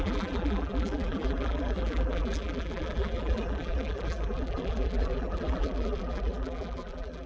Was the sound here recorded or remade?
remade